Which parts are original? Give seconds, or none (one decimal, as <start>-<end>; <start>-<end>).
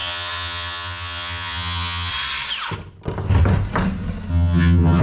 2.1-4.3